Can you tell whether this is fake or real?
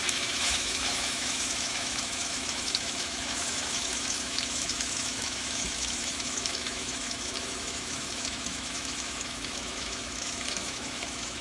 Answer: fake